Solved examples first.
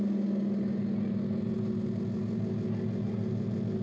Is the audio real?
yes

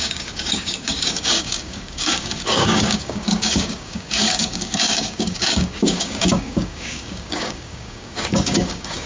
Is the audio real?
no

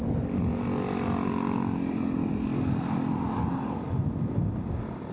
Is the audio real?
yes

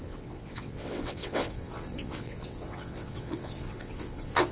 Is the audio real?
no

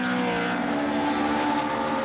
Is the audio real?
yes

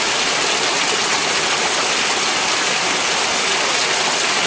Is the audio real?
yes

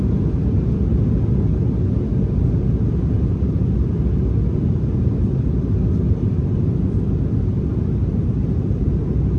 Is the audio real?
yes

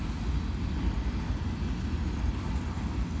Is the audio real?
yes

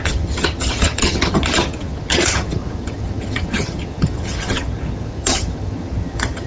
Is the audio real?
no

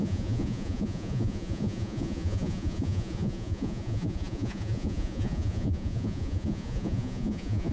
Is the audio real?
no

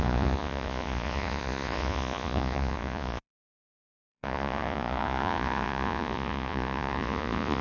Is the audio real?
no